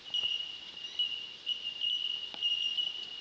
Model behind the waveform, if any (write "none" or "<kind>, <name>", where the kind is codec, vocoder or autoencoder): none